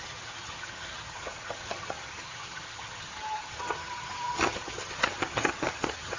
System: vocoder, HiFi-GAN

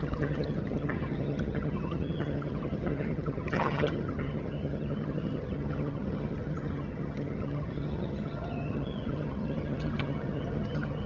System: vocoder, HiFi-GAN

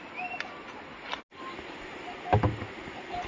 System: none